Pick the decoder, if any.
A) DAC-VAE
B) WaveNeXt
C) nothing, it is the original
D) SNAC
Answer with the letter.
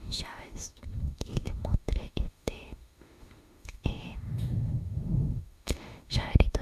A